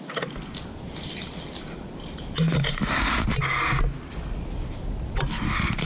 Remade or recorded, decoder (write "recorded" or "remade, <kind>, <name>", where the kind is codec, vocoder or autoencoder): recorded